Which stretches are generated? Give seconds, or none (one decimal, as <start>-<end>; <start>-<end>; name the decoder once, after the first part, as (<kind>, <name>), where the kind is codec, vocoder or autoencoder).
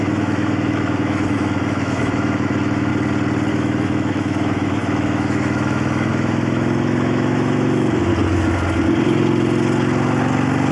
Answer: 0.0-2.9 (autoencoder, DAC-VAE); 3.5-8.1